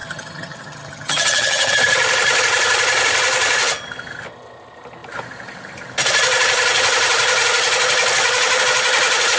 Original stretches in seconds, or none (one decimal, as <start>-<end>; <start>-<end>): 1.7-9.4